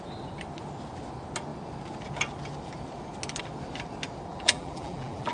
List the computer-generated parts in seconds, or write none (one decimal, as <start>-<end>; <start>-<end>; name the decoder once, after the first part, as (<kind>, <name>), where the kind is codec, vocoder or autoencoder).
4.3-5.3 (vocoder, BigVGAN v2)